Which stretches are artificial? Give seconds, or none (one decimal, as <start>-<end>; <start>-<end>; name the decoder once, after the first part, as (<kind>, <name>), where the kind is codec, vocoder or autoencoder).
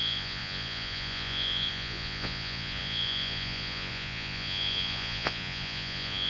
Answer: 0.0-6.3 (vocoder, Vocos)